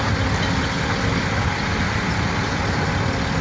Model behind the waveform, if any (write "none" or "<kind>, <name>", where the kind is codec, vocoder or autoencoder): none